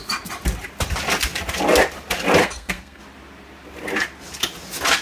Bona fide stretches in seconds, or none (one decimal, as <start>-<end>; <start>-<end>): 0.0-2.4; 3.0-5.0